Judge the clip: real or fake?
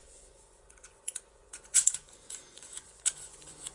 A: fake